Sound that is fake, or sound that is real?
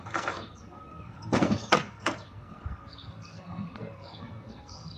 fake